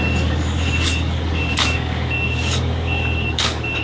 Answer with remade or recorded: remade